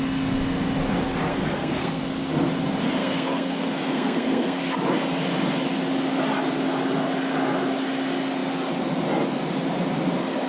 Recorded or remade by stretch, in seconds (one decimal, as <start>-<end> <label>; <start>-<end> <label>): 0.0-1.3 recorded; 1.3-2.0 remade; 2.0-3.0 recorded; 3.0-4.6 remade; 4.6-10.5 recorded